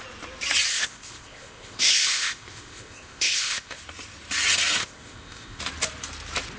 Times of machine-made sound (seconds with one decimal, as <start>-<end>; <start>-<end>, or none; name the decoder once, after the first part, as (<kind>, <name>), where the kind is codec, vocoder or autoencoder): 0.7-3.8 (codec, ZipCodec); 4.8-5.6